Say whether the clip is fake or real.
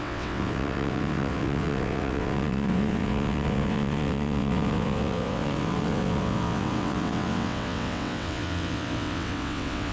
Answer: fake